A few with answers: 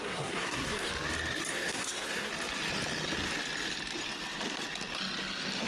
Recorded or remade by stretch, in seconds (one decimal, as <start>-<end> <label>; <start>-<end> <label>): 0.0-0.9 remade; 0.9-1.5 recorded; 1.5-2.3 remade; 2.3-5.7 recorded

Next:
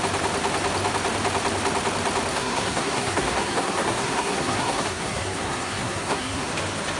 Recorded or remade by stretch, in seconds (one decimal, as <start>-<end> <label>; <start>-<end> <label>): 0.0-2.3 recorded; 2.3-6.5 remade; 6.5-7.0 recorded

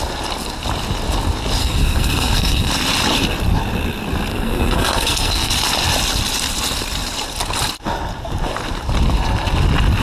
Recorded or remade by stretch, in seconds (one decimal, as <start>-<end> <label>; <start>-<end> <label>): 0.0-1.6 recorded; 1.6-2.7 remade; 2.7-4.3 recorded; 4.3-5.5 remade; 5.5-10.0 recorded

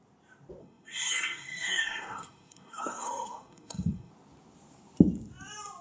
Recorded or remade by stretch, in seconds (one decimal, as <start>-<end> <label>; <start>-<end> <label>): 0.0-0.6 recorded; 0.6-4.1 remade; 4.1-5.8 recorded

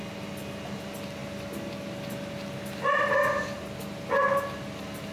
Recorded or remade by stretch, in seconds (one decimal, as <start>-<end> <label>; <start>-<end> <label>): 0.0-5.1 recorded

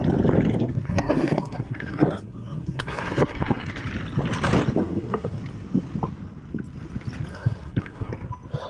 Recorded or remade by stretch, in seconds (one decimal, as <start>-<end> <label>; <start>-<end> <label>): 0.0-0.6 recorded; 0.6-3.7 remade; 3.7-4.8 recorded; 4.8-5.4 remade; 5.4-7.3 recorded; 7.3-8.1 remade; 8.1-8.7 recorded

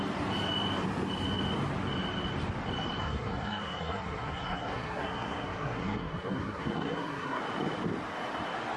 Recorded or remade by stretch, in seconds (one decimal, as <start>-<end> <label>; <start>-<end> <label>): 0.0-3.0 recorded; 3.0-7.4 remade; 7.4-8.8 recorded